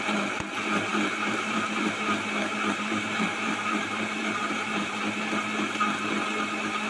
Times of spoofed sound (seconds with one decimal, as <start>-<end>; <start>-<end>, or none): 0.9-5.0